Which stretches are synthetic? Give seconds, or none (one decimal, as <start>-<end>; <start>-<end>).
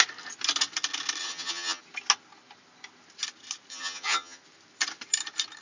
1.2-1.8; 3.7-4.4